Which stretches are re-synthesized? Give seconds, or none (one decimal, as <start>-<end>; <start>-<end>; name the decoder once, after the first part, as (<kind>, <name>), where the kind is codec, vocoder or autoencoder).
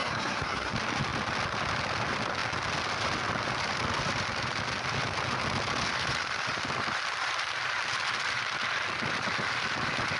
0.0-0.7 (codec, SNAC)